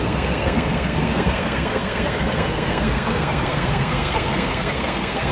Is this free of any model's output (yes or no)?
no